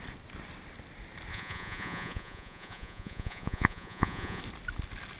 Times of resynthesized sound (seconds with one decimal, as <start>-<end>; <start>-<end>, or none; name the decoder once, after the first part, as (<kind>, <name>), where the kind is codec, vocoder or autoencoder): 1.3-4.4 (vocoder, Vocos)